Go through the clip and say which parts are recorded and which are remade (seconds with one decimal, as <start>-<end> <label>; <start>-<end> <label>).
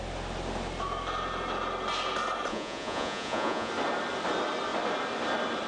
0.0-2.5 recorded; 2.5-3.7 remade; 3.7-5.7 recorded